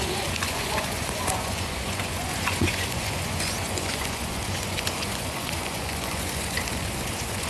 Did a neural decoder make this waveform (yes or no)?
yes